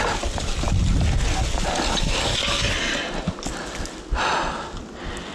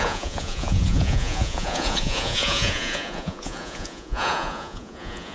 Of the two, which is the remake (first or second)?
second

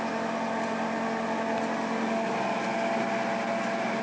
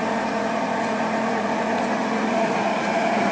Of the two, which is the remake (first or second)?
second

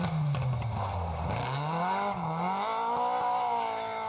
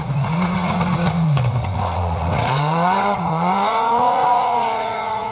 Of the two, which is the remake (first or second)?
second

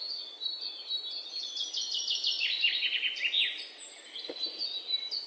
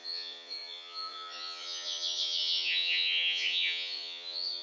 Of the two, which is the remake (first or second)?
second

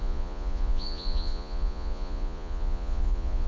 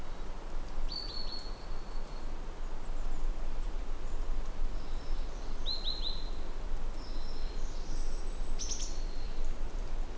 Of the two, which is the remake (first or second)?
first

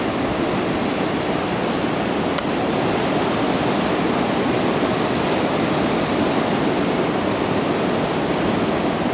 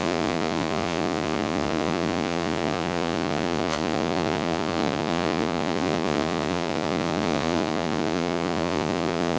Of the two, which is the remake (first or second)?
second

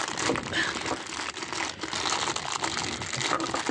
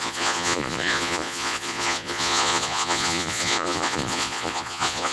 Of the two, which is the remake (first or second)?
second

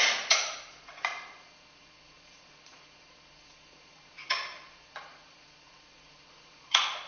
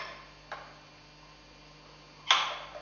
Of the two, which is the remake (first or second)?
first